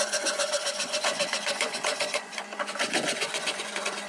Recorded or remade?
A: remade